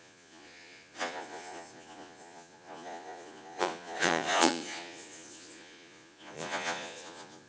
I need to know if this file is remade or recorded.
remade